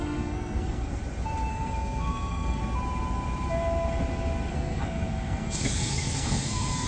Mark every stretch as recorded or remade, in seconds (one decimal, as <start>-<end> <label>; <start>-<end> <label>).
0.0-1.0 remade; 1.0-1.5 recorded; 1.5-2.6 remade; 2.6-4.5 recorded; 4.5-6.9 remade